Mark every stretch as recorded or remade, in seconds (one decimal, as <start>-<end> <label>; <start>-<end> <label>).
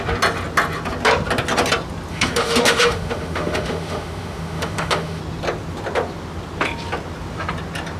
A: 0.0-2.1 recorded; 2.1-5.2 remade; 5.2-8.0 recorded